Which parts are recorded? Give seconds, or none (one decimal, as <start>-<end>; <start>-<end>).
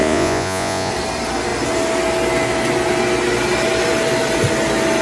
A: 0.9-5.0